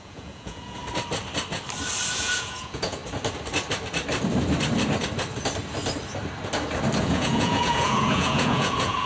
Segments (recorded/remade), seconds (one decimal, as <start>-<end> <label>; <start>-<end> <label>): 0.0-0.8 remade; 0.8-2.1 recorded; 2.1-3.0 remade; 3.0-7.0 recorded; 7.0-9.1 remade